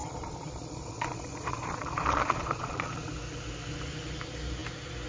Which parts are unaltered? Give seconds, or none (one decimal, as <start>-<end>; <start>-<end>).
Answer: 3.1-5.1